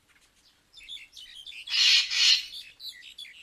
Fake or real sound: real